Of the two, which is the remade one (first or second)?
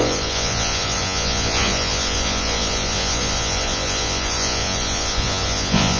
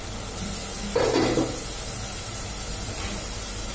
first